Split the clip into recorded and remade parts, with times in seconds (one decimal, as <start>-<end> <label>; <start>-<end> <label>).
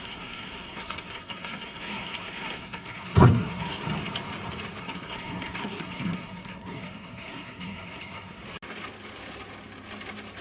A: 0.0-3.8 remade; 3.8-4.8 recorded; 4.8-8.4 remade; 8.4-10.4 recorded